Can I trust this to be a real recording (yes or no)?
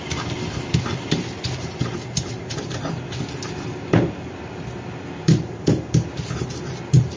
no